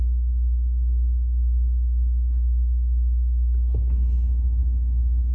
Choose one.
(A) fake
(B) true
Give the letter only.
B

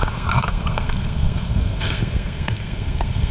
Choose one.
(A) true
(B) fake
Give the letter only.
B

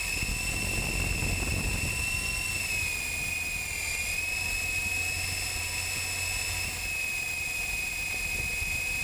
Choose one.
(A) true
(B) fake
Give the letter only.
A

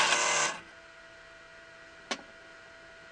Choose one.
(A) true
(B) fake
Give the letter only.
A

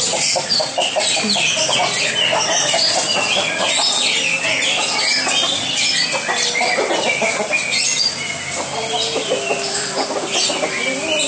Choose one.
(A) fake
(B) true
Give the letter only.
B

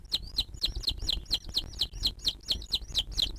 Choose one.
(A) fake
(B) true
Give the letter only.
B